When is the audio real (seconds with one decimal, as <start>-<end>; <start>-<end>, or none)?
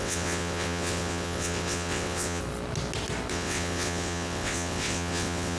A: 2.4-3.3